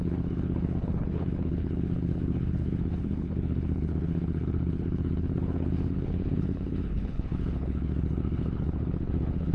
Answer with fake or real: fake